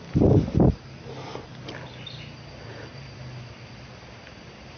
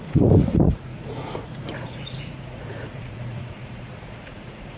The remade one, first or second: second